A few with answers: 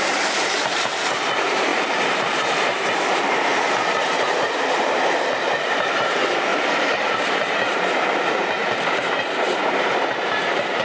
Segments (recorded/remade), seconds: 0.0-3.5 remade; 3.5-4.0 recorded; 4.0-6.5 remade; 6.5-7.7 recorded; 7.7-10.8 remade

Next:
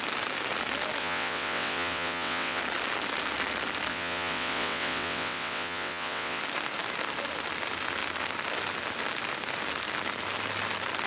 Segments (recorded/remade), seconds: 0.0-1.0 recorded; 1.0-2.6 remade; 2.6-3.9 recorded; 3.9-6.4 remade; 6.4-11.1 recorded

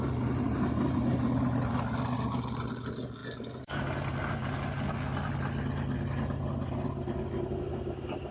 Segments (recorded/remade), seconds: 0.0-8.3 recorded

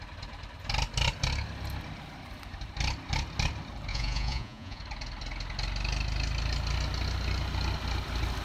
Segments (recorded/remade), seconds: 0.0-3.9 recorded; 3.9-4.8 remade; 4.8-8.4 recorded

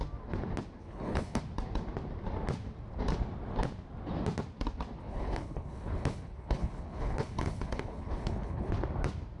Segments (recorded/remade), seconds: 0.0-0.8 recorded; 0.8-1.4 remade; 1.4-5.0 recorded; 5.0-8.7 remade; 8.7-9.4 recorded